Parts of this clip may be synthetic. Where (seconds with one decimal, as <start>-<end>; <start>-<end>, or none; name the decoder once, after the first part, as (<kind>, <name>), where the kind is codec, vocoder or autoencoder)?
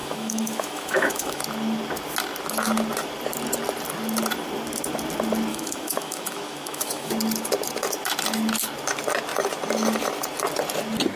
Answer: 0.0-1.4 (autoencoder, DAC-VAE); 5.5-7.1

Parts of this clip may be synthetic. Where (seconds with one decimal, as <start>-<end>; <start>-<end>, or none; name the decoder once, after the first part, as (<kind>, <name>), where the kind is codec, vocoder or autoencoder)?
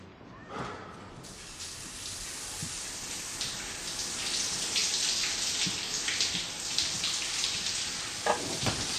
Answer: 0.0-4.8 (vocoder, BigVGAN v2); 6.7-9.0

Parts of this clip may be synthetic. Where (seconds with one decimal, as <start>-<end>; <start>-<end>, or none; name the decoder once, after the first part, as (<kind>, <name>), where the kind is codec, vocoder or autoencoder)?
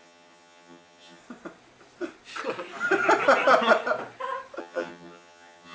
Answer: 0.0-1.2 (vocoder, HiFi-GAN); 4.6-5.7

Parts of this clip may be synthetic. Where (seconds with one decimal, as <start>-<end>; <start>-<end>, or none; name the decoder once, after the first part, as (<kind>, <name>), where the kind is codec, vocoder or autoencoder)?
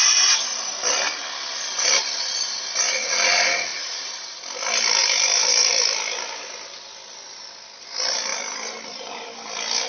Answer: 3.7-4.4 (vocoder, BigVGAN v2); 5.0-5.7; 8.3-9.1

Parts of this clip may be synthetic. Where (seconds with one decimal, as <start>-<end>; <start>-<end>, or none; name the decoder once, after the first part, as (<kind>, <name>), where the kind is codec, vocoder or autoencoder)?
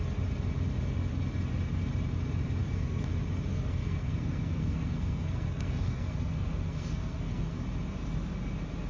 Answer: 2.6-3.1 (codec, SNAC); 3.5-7.6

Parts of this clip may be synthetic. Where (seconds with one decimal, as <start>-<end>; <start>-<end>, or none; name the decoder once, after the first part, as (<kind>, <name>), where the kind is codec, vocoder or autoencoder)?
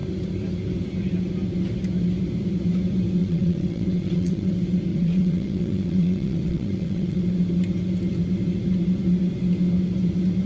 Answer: 3.2-4.5 (vocoder, WaveNeXt); 4.9-7.2